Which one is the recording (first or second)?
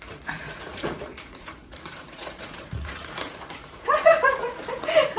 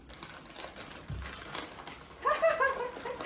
second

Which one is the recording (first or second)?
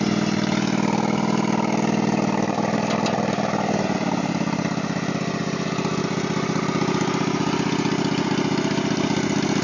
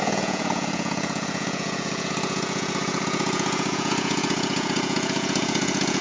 first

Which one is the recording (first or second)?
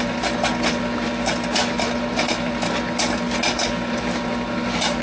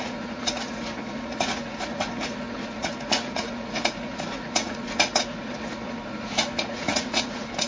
first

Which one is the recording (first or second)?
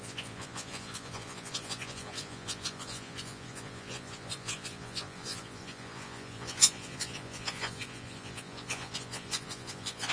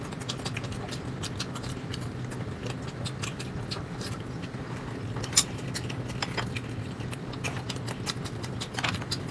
second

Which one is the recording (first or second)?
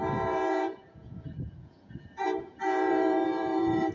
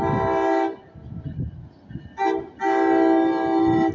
second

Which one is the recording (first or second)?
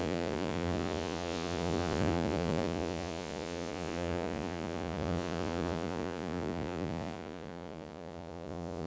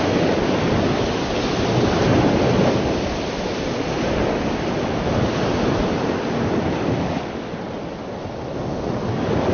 second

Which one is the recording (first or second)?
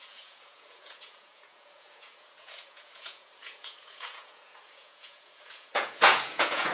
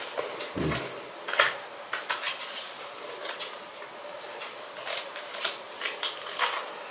second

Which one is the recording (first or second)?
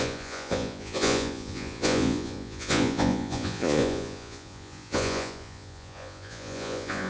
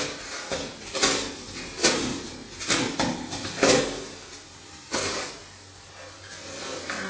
second